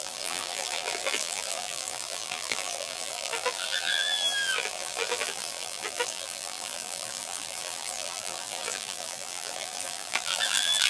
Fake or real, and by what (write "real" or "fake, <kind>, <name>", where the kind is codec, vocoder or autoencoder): fake, vocoder, BigVGAN v2